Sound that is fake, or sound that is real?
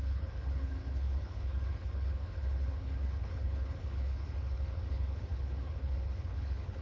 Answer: fake